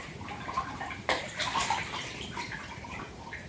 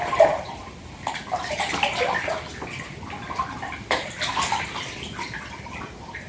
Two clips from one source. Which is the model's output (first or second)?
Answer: first